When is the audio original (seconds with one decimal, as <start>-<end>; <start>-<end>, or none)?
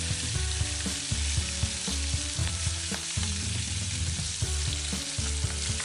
0.0-2.4; 4.3-5.8